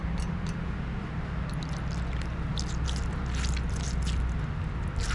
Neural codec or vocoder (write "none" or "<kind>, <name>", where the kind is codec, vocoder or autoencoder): none